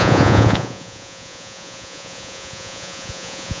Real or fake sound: fake